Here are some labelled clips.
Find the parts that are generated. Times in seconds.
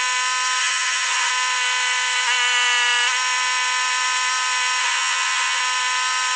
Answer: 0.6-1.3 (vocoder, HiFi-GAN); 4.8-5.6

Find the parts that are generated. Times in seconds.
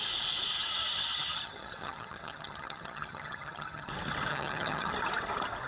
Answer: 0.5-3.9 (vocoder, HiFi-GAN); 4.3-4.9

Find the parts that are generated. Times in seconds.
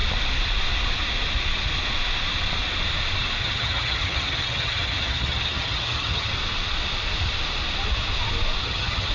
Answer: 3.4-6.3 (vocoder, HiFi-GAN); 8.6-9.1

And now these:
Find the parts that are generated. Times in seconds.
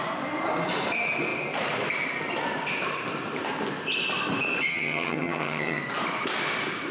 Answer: 4.7-5.8 (vocoder, HiFi-GAN)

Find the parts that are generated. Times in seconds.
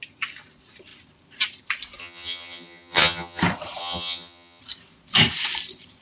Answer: 2.0-3.4 (vocoder, HiFi-GAN); 3.8-4.6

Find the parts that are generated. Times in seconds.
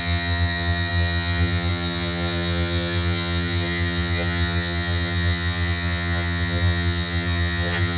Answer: 0.0-8.0 (vocoder, HiFi-GAN)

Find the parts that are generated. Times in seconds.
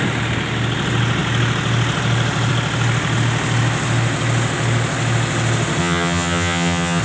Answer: 5.8-7.0 (vocoder, HiFi-GAN)